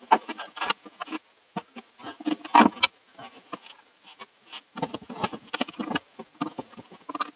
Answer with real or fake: real